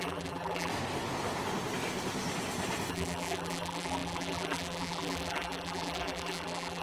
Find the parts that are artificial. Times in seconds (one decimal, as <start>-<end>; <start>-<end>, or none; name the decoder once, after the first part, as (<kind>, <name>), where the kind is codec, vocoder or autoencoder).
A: 0.0-0.7 (vocoder, BigVGAN v2); 2.9-6.8